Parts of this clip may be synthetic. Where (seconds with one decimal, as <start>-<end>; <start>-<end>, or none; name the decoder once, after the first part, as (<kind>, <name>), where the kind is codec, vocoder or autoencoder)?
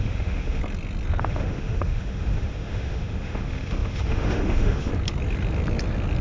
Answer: 0.0-0.6 (autoencoder, DAC-VAE); 1.2-4.9